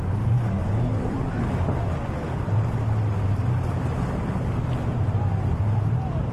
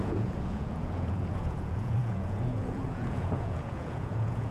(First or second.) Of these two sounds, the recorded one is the first